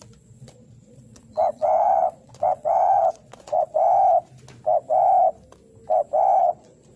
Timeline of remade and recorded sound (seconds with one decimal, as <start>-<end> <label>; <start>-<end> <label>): 0.0-3.8 remade; 3.8-6.4 recorded; 6.4-7.0 remade